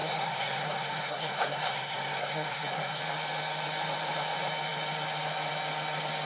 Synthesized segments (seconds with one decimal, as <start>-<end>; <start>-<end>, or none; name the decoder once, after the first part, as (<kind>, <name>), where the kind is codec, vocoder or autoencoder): 0.0-3.0 (codec, SNAC)